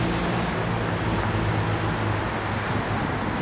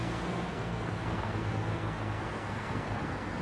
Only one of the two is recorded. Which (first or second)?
first